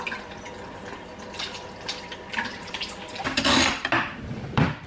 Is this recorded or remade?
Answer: recorded